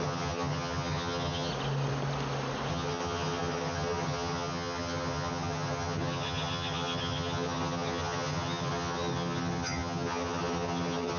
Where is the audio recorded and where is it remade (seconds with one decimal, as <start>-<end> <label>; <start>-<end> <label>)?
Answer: 0.0-1.5 remade; 1.5-2.7 recorded; 2.7-11.2 remade